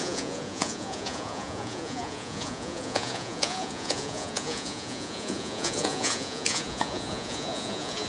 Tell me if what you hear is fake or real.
fake